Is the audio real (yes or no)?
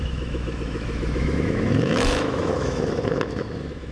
no